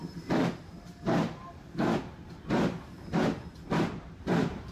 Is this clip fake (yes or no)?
yes